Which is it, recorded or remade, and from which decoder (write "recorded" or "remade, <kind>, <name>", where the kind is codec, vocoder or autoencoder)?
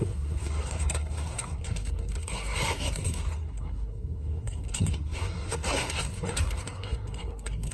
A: remade, codec, SNAC